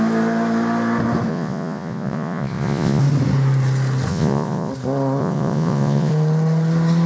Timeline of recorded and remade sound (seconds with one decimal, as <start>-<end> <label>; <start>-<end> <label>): 0.0-1.3 recorded; 1.3-3.0 remade; 3.0-4.1 recorded; 4.1-4.7 remade; 4.7-5.2 recorded; 5.2-6.1 remade; 6.1-7.1 recorded